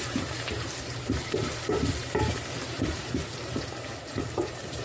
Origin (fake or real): fake